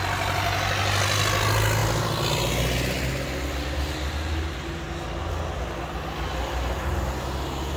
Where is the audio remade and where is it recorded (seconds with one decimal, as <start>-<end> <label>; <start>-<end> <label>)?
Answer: 0.0-7.8 recorded